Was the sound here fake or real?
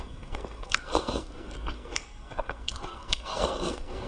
fake